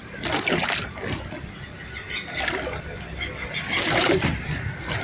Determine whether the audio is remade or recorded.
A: recorded